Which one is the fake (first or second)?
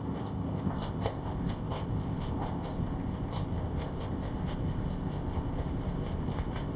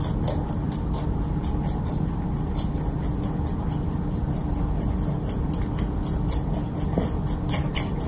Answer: first